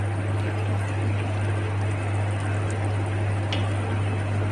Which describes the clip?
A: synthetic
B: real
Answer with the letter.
B